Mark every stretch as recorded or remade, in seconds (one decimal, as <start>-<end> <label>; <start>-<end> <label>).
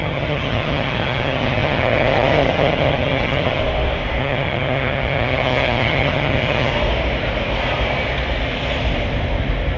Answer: 0.0-3.6 remade; 3.6-4.2 recorded; 4.2-6.7 remade; 6.7-9.8 recorded